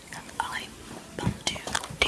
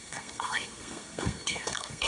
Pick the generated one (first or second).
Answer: second